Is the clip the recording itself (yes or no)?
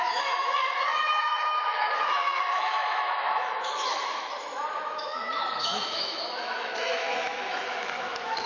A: no